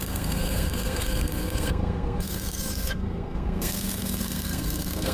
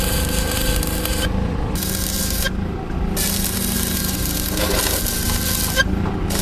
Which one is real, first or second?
second